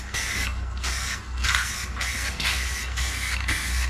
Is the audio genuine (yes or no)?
no